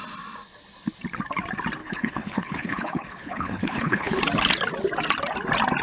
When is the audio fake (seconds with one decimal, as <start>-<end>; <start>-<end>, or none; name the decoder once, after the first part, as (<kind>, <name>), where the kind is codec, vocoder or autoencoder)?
1.8-4.2 (codec, HILCodec)